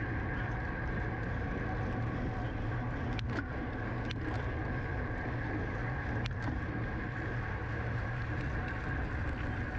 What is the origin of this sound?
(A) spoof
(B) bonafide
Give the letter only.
B